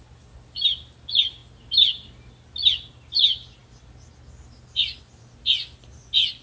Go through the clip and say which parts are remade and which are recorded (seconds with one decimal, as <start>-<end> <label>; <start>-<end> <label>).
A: 0.0-6.4 recorded